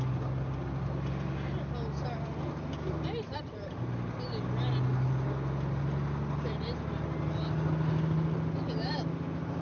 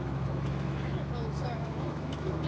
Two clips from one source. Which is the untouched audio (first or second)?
first